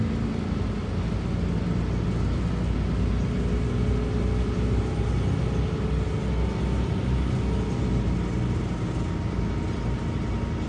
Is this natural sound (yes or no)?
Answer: yes